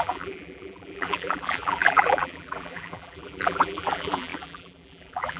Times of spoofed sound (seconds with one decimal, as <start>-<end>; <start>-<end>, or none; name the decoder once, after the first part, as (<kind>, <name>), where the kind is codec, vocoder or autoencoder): 0.0-5.4 (vocoder, BigVGAN v2)